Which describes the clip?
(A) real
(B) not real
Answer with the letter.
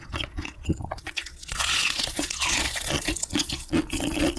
B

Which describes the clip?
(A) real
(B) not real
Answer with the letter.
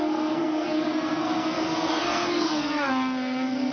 B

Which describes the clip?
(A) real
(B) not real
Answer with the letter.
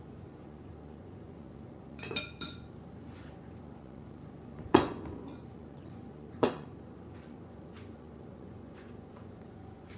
B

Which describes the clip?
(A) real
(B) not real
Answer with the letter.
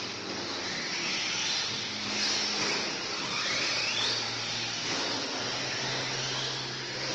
A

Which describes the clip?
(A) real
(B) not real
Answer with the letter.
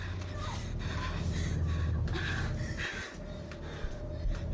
A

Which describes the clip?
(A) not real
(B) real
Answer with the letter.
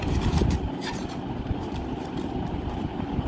B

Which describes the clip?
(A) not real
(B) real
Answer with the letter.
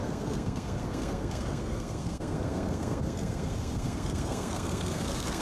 A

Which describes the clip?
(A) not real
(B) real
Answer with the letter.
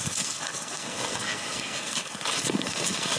A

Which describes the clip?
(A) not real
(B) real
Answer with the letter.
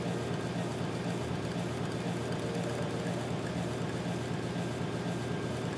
B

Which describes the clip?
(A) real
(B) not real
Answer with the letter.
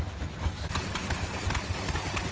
A